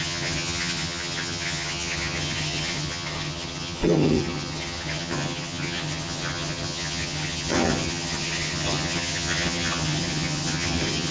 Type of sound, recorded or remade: remade